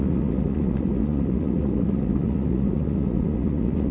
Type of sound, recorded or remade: remade